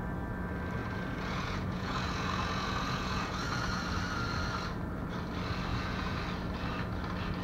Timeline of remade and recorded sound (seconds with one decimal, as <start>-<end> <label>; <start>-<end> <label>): 0.0-0.8 recorded; 0.8-3.8 remade; 3.8-5.7 recorded; 5.7-6.2 remade; 6.2-7.4 recorded